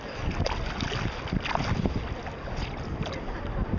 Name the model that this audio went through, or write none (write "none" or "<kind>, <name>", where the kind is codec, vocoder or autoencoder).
none